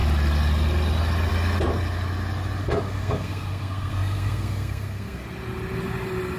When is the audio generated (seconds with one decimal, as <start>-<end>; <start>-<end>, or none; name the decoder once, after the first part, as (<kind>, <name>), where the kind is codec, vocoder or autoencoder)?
2.6-5.2 (codec, SNAC)